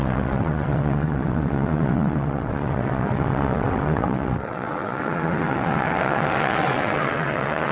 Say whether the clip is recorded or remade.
remade